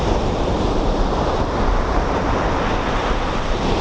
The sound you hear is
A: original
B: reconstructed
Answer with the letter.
B